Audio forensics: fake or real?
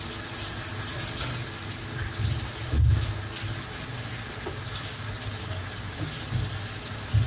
real